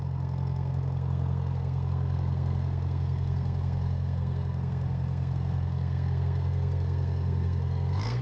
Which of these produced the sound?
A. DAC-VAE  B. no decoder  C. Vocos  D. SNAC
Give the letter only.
D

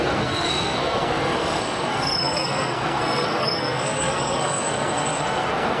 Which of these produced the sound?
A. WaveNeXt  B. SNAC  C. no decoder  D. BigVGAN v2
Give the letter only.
B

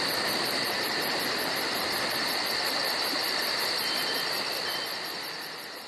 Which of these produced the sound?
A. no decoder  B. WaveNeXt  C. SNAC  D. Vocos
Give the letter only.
A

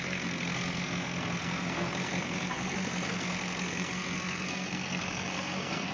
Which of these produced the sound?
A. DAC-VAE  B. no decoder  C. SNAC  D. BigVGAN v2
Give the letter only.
C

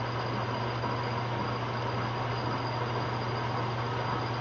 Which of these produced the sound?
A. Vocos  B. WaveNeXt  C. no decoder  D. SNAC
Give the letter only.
C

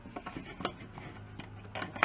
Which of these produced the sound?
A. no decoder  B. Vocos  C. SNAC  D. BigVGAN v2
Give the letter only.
A